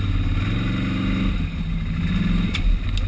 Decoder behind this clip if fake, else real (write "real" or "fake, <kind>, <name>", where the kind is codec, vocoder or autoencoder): real